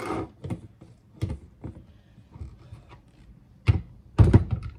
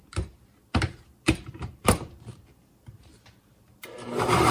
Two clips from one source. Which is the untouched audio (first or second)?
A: first